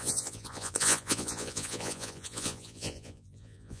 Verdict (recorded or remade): remade